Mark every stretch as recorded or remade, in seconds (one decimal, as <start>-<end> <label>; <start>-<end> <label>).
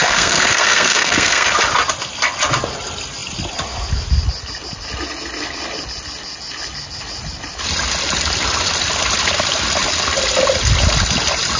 0.0-1.5 remade; 1.5-11.6 recorded